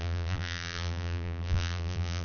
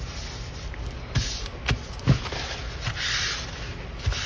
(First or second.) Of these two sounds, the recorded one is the second